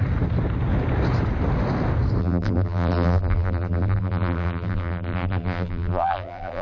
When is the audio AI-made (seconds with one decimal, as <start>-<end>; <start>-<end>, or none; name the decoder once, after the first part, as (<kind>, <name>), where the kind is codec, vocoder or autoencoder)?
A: 2.2-6.6 (vocoder, BigVGAN v2)